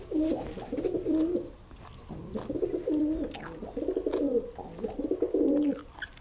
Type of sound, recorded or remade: remade